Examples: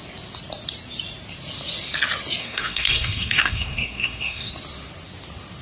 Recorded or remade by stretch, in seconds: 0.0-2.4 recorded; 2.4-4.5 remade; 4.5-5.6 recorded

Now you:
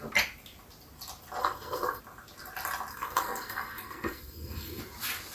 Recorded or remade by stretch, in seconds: 0.0-1.4 recorded; 1.4-2.0 remade; 2.0-2.9 recorded; 2.9-4.8 remade; 4.8-5.3 recorded

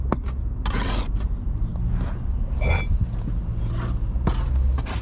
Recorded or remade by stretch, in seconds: 0.0-5.0 recorded

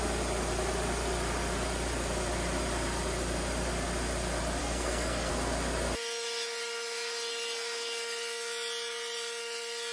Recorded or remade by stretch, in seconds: 0.0-4.6 recorded; 4.6-5.3 remade; 5.3-9.9 recorded

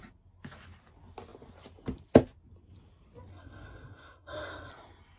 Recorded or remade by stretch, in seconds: 0.0-3.3 recorded; 3.3-4.7 remade; 4.7-5.2 recorded